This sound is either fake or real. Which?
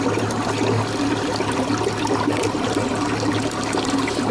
real